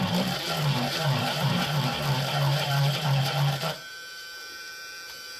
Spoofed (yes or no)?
yes